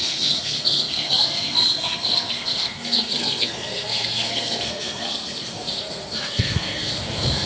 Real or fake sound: fake